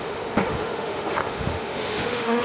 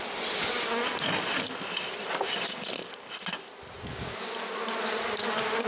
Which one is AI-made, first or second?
first